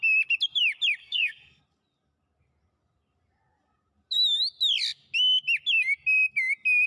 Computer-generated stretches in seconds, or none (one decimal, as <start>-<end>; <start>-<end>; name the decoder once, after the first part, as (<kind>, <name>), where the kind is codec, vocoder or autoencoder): 1.0-1.6 (codec, SNAC)